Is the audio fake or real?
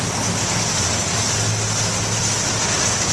real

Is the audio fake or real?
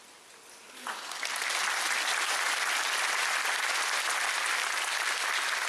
real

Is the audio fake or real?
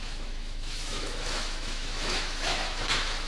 fake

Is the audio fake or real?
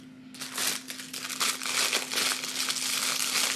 real